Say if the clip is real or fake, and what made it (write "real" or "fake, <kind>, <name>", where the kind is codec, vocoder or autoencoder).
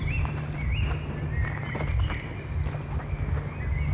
real